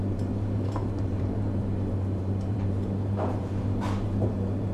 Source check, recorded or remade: remade